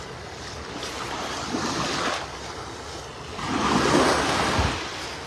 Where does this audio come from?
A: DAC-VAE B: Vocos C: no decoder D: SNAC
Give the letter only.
C